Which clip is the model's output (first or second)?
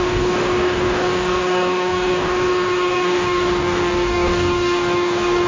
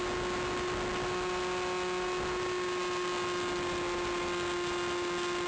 first